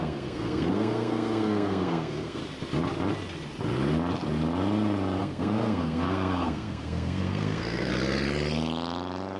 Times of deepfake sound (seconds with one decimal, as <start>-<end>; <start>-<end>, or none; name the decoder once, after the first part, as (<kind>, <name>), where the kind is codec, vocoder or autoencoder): 0.0-2.4 (codec, SNAC); 5.2-7.9